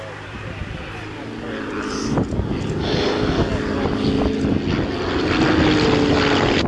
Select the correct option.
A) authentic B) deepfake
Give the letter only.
A